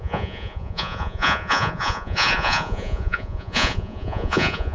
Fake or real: fake